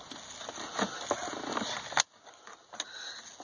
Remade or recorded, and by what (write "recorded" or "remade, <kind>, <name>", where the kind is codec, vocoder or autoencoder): recorded